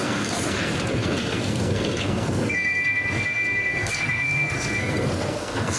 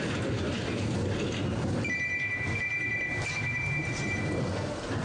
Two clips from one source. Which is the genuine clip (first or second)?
second